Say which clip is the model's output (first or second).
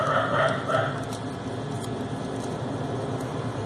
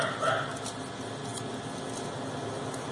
first